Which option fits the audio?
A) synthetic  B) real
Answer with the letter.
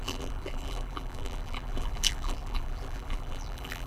A